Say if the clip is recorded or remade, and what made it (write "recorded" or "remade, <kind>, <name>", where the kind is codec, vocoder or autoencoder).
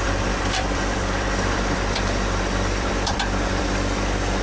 remade, vocoder, BigVGAN v2